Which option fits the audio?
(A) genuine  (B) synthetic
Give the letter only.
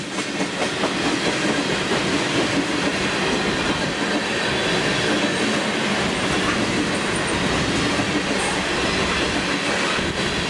A